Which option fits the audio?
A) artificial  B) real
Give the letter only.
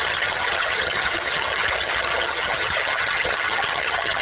A